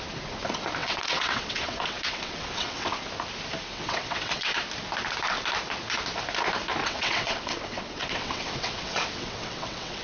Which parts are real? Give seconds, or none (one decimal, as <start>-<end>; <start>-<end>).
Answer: 0.0-0.8; 3.0-3.7; 4.6-6.8